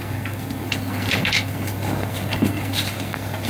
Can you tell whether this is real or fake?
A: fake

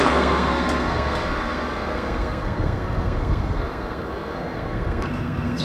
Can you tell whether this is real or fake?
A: fake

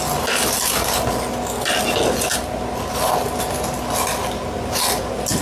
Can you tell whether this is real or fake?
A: real